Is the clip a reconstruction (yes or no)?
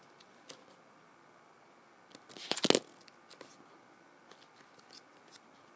no